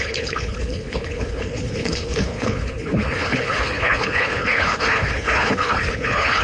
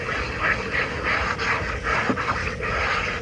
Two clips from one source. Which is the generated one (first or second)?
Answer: first